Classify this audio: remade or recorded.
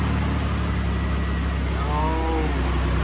recorded